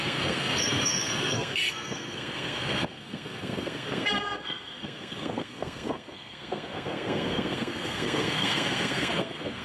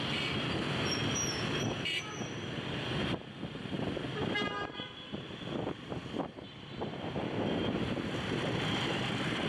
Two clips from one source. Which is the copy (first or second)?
first